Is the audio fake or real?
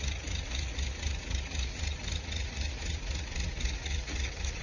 fake